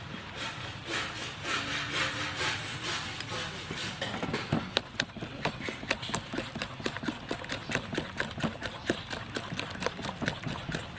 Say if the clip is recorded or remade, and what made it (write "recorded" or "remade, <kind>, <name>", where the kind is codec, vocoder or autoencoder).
recorded